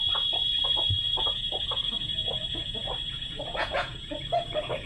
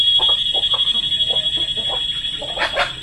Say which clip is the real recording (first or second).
second